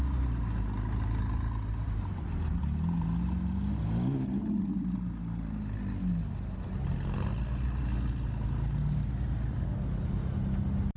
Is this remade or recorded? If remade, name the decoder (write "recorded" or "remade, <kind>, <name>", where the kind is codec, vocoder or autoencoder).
recorded